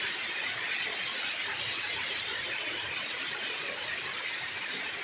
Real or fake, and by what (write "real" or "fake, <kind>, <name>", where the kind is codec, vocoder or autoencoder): real